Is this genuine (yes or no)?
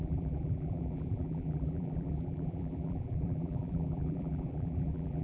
no